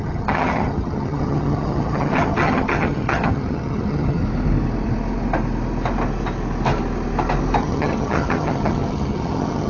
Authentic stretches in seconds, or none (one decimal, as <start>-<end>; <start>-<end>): 4.2-7.6